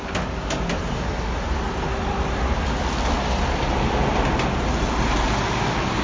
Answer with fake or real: real